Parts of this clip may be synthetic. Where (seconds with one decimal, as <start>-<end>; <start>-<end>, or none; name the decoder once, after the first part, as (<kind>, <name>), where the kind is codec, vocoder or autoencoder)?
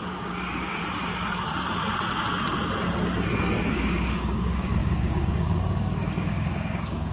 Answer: 0.0-0.8 (codec, DAC); 3.7-7.1